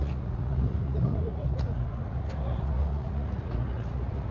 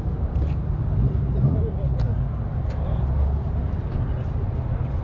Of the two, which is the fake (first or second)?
first